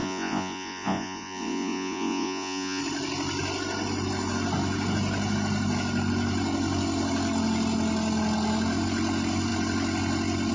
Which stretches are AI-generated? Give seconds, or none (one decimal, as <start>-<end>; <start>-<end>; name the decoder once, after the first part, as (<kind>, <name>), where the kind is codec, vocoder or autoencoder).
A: 0.0-2.8 (vocoder, Vocos)